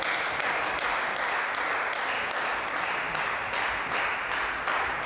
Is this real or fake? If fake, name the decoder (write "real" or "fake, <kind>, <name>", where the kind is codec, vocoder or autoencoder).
real